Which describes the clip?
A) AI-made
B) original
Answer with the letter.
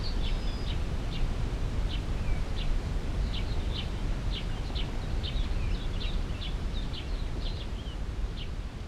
B